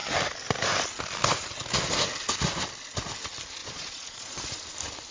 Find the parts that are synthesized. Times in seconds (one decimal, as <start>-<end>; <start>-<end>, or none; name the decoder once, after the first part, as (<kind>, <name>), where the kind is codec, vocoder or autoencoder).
3.6-4.4 (vocoder, Vocos)